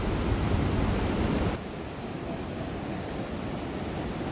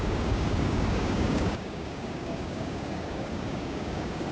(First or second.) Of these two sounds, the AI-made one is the second